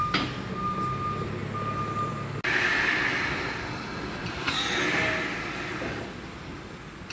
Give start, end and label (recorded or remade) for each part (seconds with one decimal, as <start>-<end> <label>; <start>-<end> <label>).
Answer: 0.0-7.1 recorded